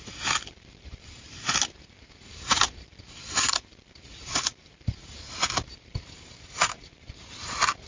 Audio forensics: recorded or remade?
remade